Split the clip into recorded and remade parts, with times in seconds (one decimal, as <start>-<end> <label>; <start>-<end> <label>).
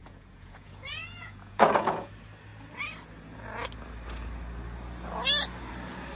0.0-2.1 remade; 2.1-6.2 recorded